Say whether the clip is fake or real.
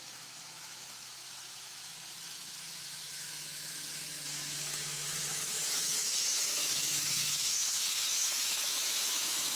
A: fake